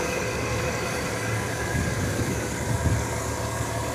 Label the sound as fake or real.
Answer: fake